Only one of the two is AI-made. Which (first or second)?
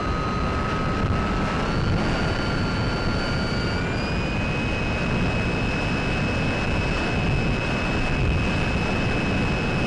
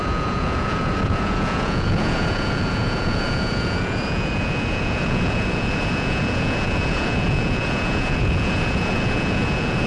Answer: second